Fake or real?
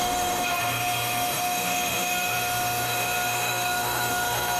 fake